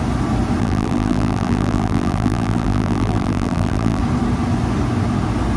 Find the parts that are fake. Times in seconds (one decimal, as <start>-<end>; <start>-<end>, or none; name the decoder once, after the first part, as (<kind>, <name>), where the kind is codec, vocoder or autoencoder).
0.6-4.0 (vocoder, BigVGAN v2)